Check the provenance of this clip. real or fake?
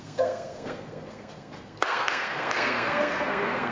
fake